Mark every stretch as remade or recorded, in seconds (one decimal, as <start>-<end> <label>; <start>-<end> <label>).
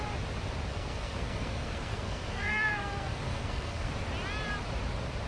0.0-0.7 recorded; 0.7-3.9 remade; 3.9-5.3 recorded